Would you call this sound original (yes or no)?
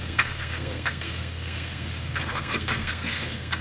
no